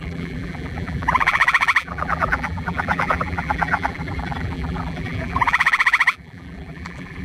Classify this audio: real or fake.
fake